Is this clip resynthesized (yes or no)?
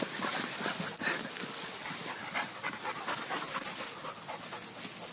no